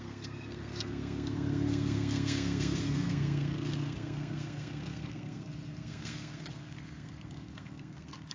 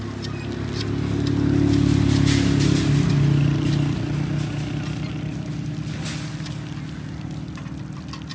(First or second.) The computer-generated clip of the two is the first